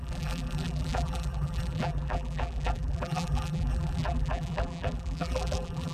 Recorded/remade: remade